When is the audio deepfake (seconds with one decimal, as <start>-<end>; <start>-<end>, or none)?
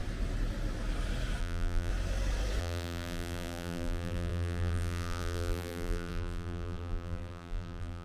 1.4-1.9; 2.6-8.0